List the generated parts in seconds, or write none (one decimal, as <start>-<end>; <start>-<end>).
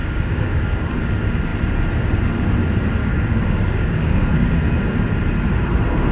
0.0-1.0; 3.0-4.5